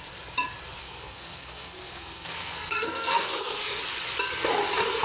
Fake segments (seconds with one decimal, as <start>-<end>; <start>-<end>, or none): 0.8-3.8